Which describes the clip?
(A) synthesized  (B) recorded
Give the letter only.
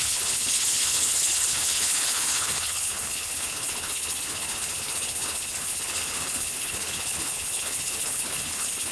A